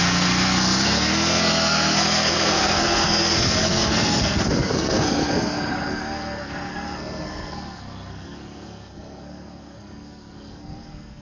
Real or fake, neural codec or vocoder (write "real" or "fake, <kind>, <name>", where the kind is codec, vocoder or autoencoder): fake, codec, SNAC